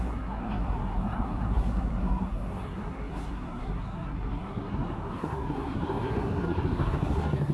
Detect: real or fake fake